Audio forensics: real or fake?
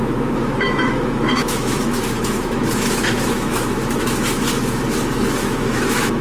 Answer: fake